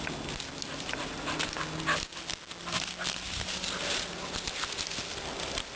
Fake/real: real